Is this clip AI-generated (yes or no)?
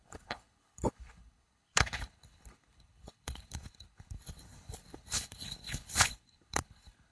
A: yes